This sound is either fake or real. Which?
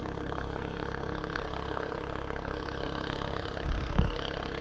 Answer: fake